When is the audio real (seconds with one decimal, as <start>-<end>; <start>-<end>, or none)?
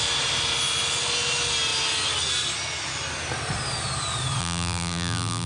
0.0-4.4